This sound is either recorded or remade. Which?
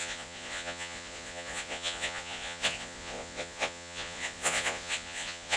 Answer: remade